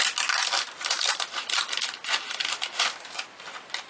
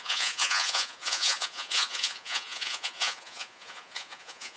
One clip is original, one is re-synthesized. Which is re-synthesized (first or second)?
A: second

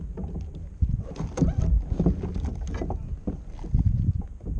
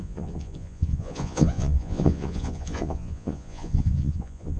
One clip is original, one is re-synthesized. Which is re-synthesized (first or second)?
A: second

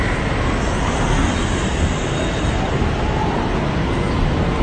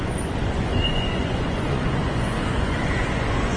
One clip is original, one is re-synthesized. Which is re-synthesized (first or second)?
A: second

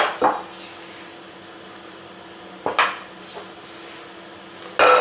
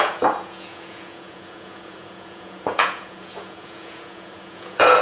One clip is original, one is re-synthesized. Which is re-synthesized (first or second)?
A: second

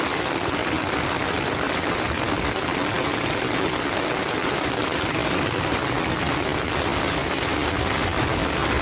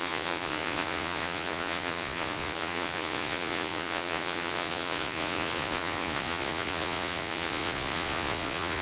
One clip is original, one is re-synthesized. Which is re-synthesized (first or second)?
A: second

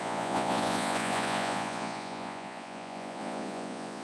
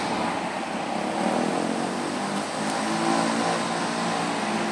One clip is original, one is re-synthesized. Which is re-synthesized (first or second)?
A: first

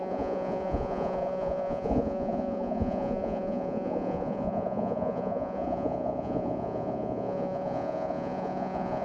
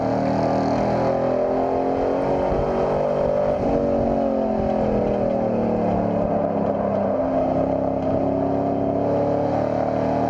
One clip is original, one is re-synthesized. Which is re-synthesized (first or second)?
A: first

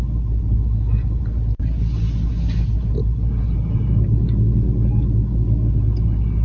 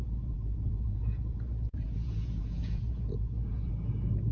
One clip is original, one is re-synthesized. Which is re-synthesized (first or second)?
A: second